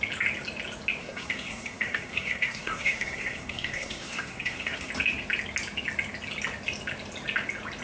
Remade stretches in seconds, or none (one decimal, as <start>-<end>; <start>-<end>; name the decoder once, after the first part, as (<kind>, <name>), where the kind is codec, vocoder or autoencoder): 1.0-4.9 (codec, SNAC)